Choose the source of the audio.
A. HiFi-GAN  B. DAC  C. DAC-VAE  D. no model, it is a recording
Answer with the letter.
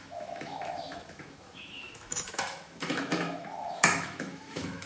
C